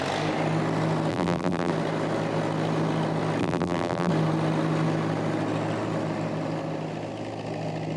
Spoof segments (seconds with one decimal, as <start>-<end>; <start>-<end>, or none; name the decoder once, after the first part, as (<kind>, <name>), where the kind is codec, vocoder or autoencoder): 1.1-1.7 (vocoder, BigVGAN v2); 3.4-4.1